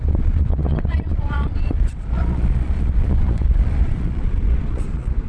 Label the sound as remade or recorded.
remade